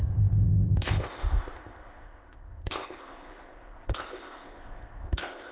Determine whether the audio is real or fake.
fake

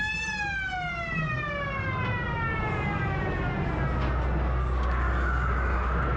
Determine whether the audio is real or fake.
real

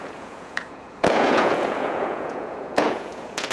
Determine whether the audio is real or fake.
fake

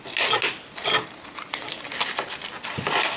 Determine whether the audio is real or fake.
real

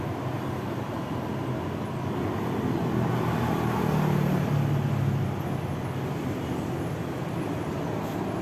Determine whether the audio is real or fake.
real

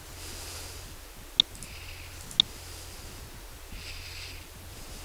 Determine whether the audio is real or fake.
real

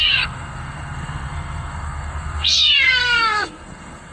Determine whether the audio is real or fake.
fake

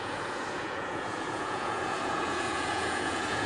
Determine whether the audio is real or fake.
fake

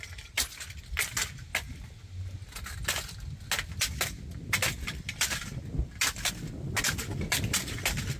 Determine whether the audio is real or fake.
real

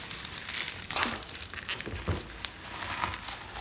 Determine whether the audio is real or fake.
real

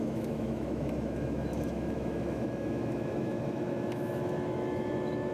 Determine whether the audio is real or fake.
fake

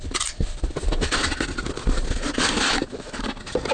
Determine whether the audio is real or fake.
real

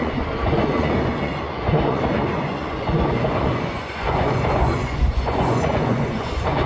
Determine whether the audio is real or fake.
fake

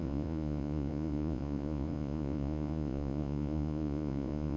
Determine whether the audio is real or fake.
fake